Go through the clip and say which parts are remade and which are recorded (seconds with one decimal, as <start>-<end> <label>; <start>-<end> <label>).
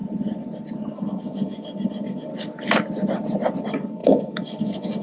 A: 0.0-0.9 recorded; 0.9-2.3 remade; 2.3-3.6 recorded; 3.6-5.0 remade